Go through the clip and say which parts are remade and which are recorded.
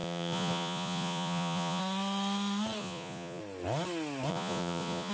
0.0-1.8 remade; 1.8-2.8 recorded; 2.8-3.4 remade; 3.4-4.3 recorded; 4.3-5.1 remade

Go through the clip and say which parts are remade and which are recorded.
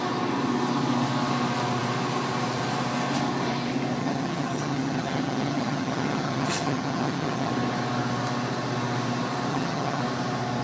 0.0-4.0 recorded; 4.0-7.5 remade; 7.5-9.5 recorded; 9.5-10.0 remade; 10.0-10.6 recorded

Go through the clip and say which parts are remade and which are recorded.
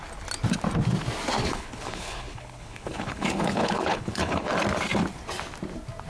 0.0-1.4 recorded; 1.4-4.5 remade; 4.5-6.1 recorded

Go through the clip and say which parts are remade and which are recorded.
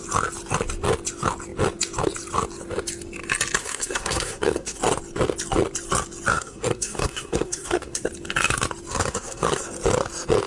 0.0-3.6 recorded; 3.6-4.8 remade; 4.8-6.3 recorded; 6.3-8.1 remade; 8.1-8.9 recorded; 8.9-9.6 remade; 9.6-10.5 recorded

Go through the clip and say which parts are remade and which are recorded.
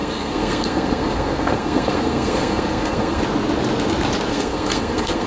0.0-3.2 remade; 3.2-4.3 recorded; 4.3-5.3 remade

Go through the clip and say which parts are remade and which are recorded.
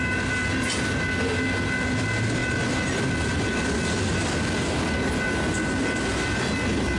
0.0-7.0 recorded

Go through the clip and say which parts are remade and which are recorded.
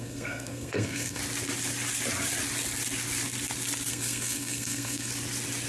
0.0-1.2 remade; 1.2-3.9 recorded; 3.9-5.1 remade; 5.1-5.7 recorded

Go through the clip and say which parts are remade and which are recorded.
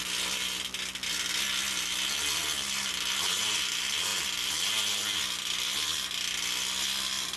0.0-7.4 recorded